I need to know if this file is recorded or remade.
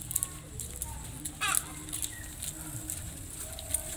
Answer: recorded